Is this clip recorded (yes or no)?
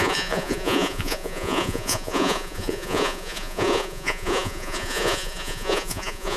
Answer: no